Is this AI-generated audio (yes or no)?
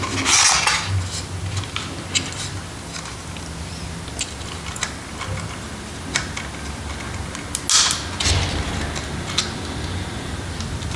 no